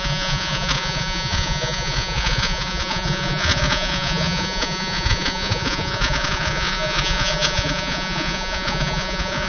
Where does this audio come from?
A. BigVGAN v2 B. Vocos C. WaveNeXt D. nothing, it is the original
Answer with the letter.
B